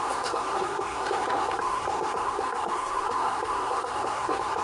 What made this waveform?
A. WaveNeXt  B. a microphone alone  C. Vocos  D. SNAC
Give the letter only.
D